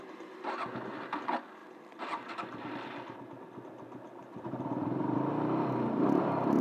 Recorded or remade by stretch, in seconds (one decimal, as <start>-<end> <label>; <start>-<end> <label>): 0.0-1.6 recorded; 1.6-5.3 remade; 5.3-6.6 recorded